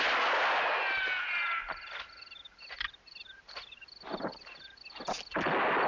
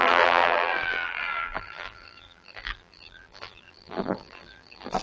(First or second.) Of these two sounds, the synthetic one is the second